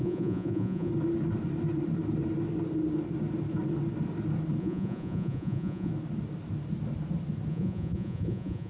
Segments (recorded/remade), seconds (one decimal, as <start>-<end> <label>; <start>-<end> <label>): 0.0-0.9 remade; 0.9-4.6 recorded; 4.6-5.9 remade; 5.9-7.5 recorded; 7.5-8.7 remade